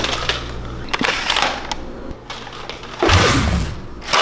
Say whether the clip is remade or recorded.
recorded